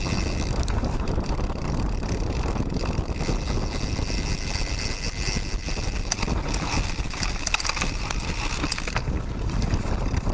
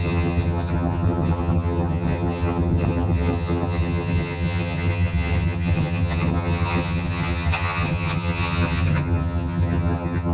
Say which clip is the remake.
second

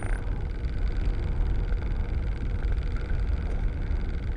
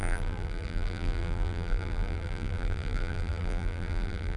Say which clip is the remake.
second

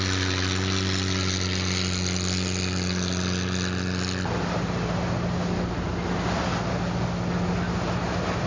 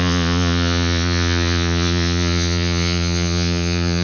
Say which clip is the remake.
second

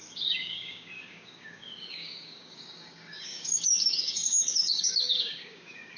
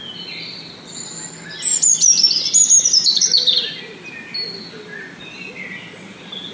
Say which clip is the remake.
first